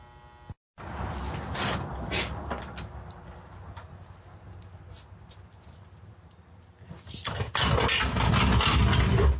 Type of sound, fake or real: real